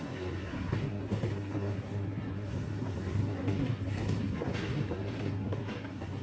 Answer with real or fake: fake